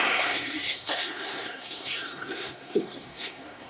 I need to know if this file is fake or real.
fake